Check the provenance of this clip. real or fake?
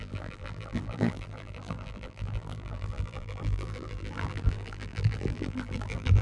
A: fake